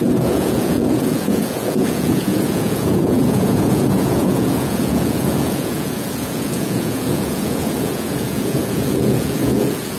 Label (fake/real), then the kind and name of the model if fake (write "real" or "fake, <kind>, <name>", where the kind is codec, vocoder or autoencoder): fake, vocoder, Vocos